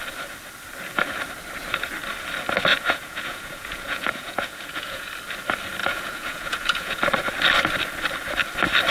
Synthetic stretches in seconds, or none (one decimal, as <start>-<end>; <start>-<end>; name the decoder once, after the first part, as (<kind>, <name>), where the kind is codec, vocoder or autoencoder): 2.7-5.1 (vocoder, Vocos); 5.8-7.0